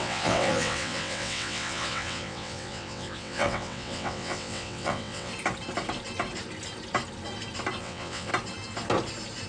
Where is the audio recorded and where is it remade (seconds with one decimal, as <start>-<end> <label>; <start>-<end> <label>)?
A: 0.0-5.3 remade; 5.3-7.8 recorded; 7.8-8.3 remade; 8.3-9.5 recorded